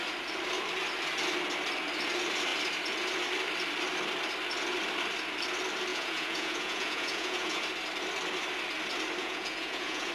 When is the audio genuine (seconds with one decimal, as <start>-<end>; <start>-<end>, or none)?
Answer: 0.0-5.9; 7.6-9.2